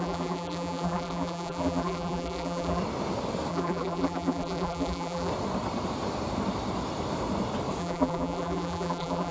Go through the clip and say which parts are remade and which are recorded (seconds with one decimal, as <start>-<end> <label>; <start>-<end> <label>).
0.0-2.8 remade; 2.8-3.5 recorded; 3.5-5.3 remade; 5.3-7.8 recorded; 7.8-9.3 remade